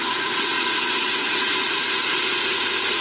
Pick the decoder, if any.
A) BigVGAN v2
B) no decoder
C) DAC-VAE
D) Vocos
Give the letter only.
D